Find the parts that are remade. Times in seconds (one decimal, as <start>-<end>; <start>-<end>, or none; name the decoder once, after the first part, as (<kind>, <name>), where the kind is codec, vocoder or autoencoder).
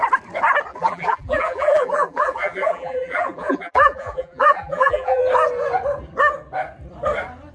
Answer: 0.7-5.2 (vocoder, BigVGAN v2)